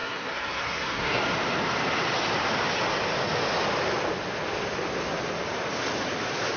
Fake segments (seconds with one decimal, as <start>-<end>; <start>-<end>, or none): 0.0-1.2